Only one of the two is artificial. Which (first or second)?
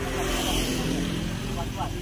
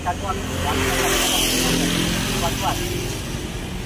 first